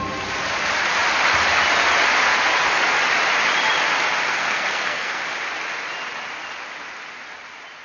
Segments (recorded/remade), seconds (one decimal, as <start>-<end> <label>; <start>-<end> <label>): 0.0-4.3 recorded; 4.3-5.2 remade; 5.2-7.8 recorded